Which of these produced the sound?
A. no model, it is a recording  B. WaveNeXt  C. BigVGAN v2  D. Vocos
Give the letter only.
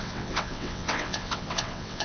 B